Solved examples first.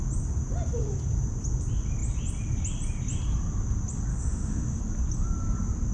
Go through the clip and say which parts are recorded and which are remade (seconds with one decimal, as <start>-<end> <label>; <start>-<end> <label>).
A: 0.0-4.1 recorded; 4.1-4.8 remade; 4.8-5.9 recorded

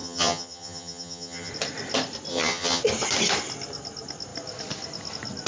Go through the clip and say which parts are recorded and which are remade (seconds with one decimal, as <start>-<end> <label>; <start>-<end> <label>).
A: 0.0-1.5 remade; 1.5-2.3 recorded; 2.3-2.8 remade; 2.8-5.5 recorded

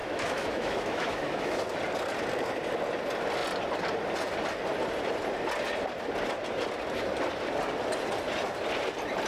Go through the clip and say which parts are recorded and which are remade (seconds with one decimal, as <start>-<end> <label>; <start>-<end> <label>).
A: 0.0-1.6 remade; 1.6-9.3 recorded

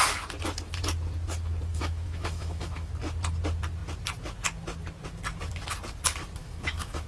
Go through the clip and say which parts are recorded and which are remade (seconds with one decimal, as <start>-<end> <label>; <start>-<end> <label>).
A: 0.0-1.7 recorded; 1.7-2.9 remade; 2.9-6.4 recorded; 6.4-7.1 remade

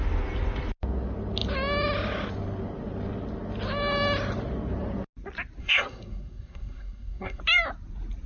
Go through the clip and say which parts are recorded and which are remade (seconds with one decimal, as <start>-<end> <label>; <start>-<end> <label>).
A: 0.0-5.6 recorded; 5.6-7.4 remade; 7.4-8.3 recorded

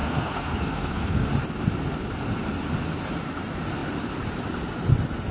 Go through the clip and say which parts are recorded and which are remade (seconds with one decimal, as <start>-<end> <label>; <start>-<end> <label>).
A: 0.0-1.3 remade; 1.3-5.3 recorded

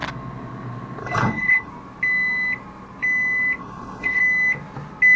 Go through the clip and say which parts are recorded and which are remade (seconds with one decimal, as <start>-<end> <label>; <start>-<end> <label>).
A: 0.0-1.0 recorded; 1.0-1.7 remade; 1.7-3.6 recorded; 3.6-4.2 remade; 4.2-5.2 recorded